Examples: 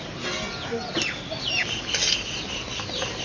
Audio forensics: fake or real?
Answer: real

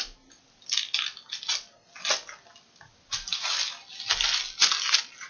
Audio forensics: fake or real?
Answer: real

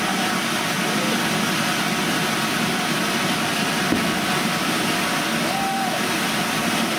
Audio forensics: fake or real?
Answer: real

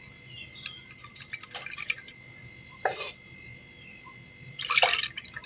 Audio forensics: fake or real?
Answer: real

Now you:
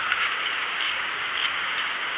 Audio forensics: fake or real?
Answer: fake